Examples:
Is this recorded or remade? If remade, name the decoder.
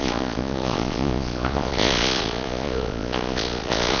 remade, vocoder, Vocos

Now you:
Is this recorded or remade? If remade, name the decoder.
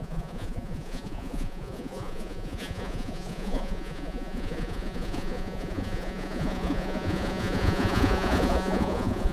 remade, vocoder, Vocos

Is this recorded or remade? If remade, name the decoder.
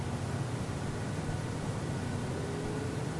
recorded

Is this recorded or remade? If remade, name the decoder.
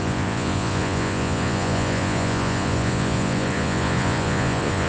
remade, vocoder, Vocos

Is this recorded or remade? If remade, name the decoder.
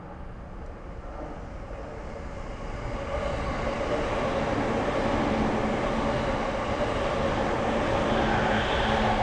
recorded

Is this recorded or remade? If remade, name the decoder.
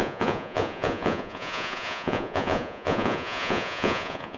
remade, vocoder, Vocos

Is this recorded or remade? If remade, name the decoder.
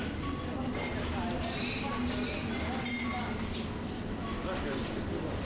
recorded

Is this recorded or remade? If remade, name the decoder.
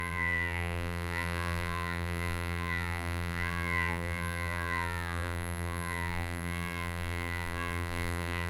remade, vocoder, BigVGAN v2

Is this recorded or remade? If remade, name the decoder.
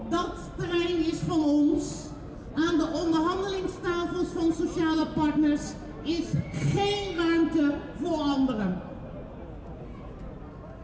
recorded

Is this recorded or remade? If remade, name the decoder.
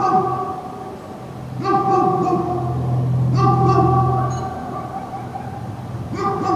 recorded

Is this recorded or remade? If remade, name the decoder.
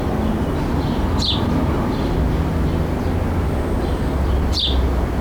recorded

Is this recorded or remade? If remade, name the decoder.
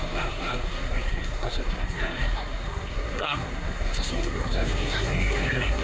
remade, codec, SNAC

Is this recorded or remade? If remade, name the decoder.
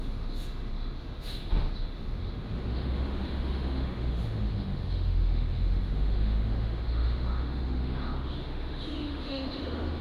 remade, autoencoder, DAC-VAE